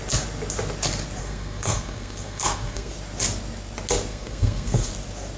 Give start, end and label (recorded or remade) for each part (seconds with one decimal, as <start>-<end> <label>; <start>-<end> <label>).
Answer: 0.0-1.2 recorded; 1.2-2.9 remade; 2.9-4.1 recorded; 4.1-4.9 remade; 4.9-5.4 recorded